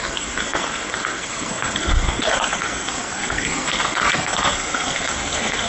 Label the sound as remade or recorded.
remade